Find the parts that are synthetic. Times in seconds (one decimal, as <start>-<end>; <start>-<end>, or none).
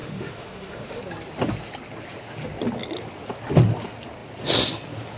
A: 0.0-1.0